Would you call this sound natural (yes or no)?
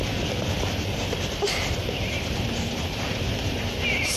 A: no